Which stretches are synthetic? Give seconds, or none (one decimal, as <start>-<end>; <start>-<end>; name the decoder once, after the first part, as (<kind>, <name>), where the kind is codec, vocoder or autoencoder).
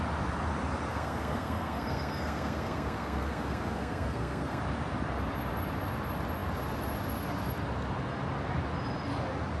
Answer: 0.9-4.6 (codec, SNAC)